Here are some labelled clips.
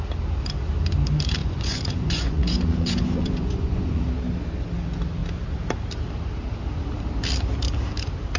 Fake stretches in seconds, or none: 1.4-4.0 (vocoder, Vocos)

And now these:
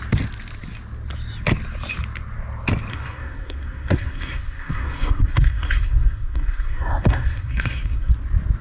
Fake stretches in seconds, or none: 2.9-8.1 (codec, SNAC)

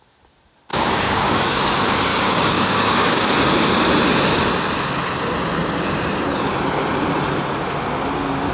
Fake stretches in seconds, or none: 0.7-1.4 (codec, DAC); 2.1-3.3

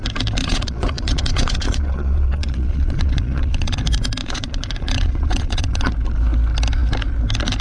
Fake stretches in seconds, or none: 0.4-3.8 (vocoder, Vocos); 4.2-5.9

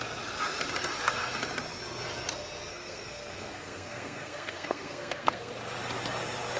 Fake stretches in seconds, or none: 2.7-5.5 (codec, SNAC)

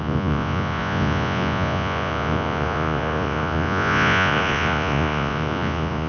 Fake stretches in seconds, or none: 0.0-6.1 (vocoder, Vocos)